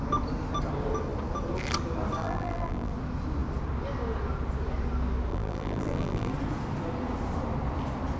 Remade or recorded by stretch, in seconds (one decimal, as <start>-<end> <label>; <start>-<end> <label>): 0.0-2.2 recorded; 2.2-2.9 remade; 2.9-5.3 recorded; 5.3-6.3 remade; 6.3-8.2 recorded